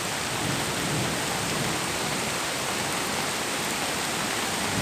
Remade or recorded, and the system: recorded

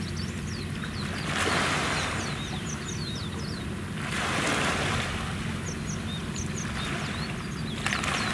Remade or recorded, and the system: recorded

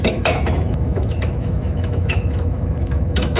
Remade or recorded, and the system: remade, autoencoder, DAC-VAE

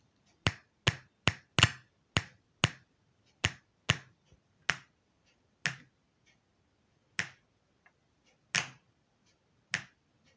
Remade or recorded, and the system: recorded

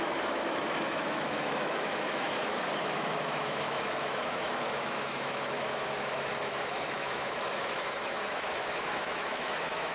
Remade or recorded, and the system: remade, autoencoder, DAC-VAE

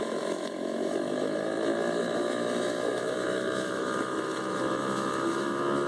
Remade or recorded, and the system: remade, autoencoder, DAC-VAE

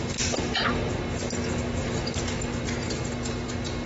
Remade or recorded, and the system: recorded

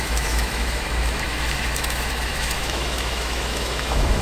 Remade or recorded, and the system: remade, autoencoder, DAC-VAE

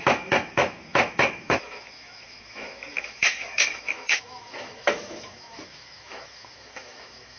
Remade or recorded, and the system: remade, autoencoder, DAC-VAE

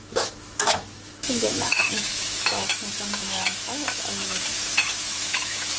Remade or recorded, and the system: remade, autoencoder, DAC-VAE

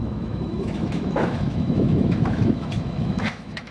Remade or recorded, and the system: remade, autoencoder, DAC-VAE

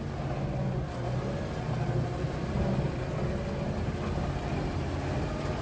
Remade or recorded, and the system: recorded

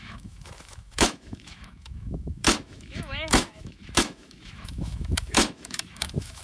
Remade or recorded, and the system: remade, autoencoder, DAC-VAE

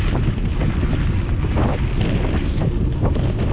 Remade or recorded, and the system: recorded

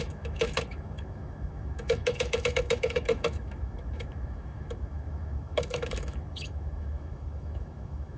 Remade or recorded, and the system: remade, autoencoder, DAC-VAE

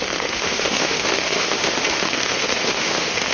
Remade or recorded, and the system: remade, autoencoder, DAC-VAE